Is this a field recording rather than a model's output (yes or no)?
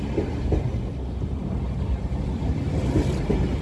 yes